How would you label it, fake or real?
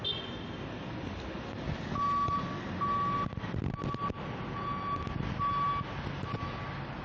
real